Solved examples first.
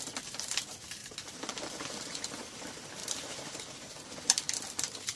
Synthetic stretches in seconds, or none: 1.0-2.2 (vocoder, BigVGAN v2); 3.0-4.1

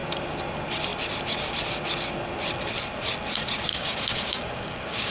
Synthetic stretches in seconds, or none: 3.7-5.1 (codec, DAC)